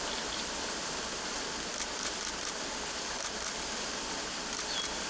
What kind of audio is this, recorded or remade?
remade